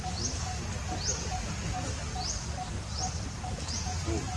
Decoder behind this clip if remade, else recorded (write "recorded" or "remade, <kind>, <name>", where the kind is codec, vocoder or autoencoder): recorded